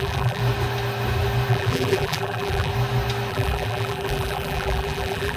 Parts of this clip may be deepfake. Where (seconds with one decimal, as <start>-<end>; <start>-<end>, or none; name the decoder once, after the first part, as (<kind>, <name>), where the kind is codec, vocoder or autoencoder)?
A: 0.0-0.4 (vocoder, BigVGAN v2); 1.5-2.7; 3.3-5.4